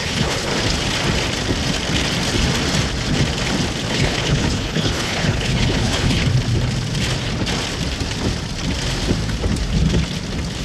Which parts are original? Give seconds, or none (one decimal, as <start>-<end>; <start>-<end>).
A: 0.5-3.9; 6.2-10.6